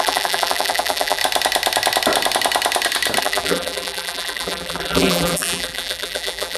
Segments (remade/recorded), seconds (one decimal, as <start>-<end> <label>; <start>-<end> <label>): 0.0-1.2 remade; 1.2-3.2 recorded; 3.2-6.6 remade